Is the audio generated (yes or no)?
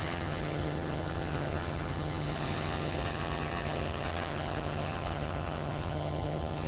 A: yes